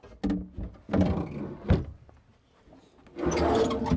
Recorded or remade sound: recorded